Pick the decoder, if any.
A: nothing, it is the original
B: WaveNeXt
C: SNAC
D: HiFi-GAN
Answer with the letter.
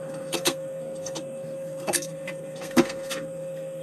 C